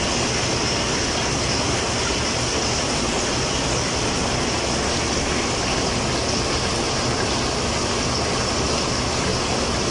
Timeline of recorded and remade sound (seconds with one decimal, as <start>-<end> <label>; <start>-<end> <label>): 0.0-9.3 recorded; 9.3-9.9 remade